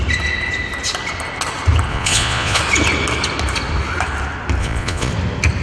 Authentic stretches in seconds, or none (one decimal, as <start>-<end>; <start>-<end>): 0.0-1.9; 2.6-4.6; 5.1-5.6